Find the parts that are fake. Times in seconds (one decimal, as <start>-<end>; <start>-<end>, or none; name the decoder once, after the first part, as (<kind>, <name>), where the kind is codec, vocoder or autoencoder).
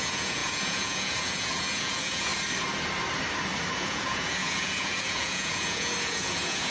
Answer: 0.0-2.3 (vocoder, Vocos); 3.7-6.7